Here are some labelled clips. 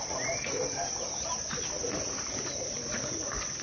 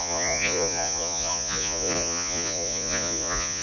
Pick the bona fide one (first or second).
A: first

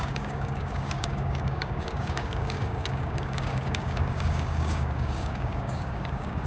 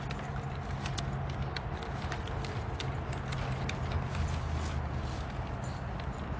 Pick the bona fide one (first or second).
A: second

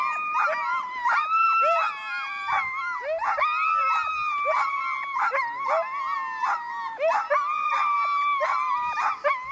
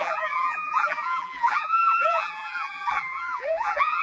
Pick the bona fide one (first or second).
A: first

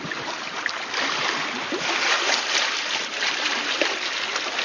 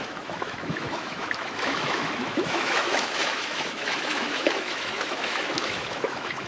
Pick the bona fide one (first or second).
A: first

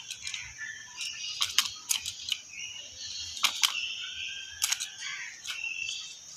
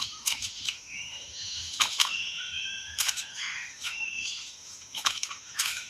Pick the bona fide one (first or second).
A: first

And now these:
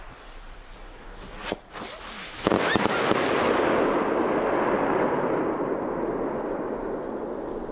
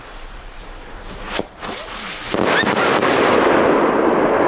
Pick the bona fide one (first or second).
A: first